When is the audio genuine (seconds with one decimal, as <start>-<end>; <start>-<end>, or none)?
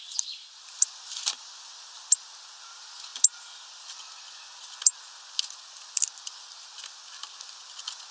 0.0-8.1